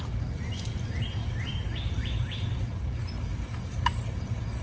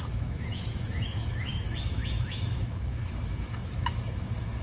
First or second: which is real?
first